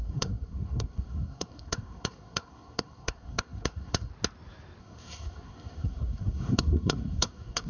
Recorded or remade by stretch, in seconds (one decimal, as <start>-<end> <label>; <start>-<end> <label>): 0.0-4.1 remade; 4.1-4.8 recorded; 4.8-7.7 remade